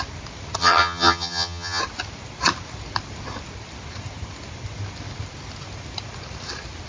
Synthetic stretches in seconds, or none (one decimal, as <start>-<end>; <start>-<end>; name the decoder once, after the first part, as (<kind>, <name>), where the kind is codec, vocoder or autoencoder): 0.6-1.8 (vocoder, HiFi-GAN)